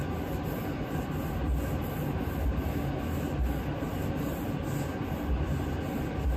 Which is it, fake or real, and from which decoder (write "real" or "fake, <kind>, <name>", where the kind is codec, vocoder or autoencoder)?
real